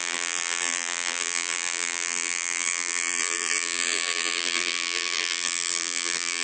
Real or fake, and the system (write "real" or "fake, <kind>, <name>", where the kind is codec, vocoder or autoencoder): fake, vocoder, BigVGAN v2